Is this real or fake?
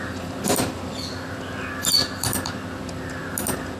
real